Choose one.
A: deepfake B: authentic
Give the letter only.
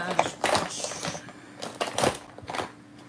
B